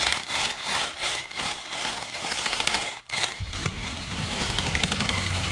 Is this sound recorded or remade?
remade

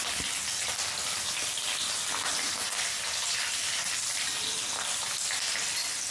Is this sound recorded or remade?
recorded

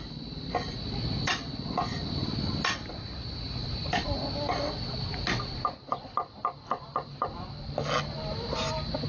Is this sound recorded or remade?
recorded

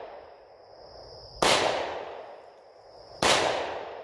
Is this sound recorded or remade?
recorded